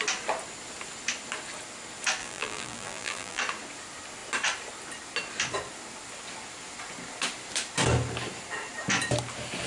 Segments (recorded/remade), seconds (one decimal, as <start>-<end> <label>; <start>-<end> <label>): 0.0-2.2 recorded; 2.2-3.4 remade; 3.4-9.7 recorded